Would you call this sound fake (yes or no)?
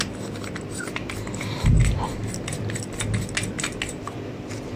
no